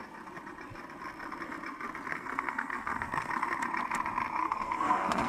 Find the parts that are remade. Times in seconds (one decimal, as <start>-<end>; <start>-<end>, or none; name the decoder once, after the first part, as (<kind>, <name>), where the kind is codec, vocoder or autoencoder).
2.1-3.3 (codec, SNAC); 4.4-5.3